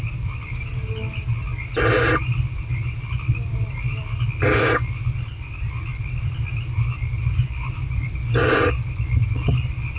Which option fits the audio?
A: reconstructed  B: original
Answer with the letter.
B